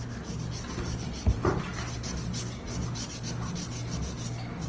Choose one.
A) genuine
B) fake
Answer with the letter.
A